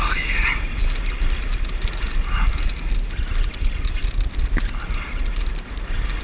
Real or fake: real